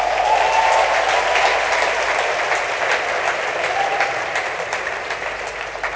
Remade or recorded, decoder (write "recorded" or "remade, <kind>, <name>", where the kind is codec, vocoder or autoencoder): recorded